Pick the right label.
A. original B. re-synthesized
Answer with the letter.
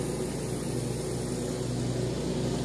A